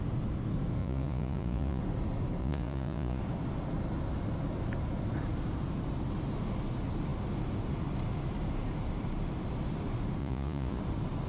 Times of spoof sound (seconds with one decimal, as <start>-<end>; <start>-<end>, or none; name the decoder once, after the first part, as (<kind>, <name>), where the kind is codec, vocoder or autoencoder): 0.8-1.8 (vocoder, Vocos); 2.4-3.2; 10.2-10.8